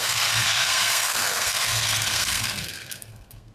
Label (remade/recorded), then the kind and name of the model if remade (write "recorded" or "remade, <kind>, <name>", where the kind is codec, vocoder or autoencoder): remade, codec, SNAC